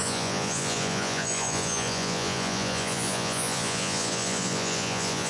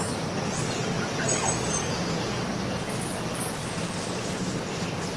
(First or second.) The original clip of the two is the second